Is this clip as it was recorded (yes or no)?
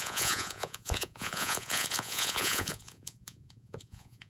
no